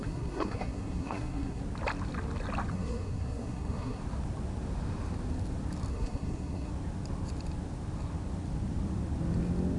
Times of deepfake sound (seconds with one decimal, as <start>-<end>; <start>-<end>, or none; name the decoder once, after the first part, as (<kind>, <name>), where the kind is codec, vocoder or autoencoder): 0.0-1.6 (codec, SNAC); 2.7-4.0; 5.9-6.7